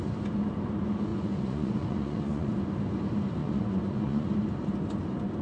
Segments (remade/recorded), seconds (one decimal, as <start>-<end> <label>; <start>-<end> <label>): 0.0-1.1 recorded; 1.1-2.5 remade; 2.5-3.4 recorded; 3.4-4.3 remade; 4.3-5.4 recorded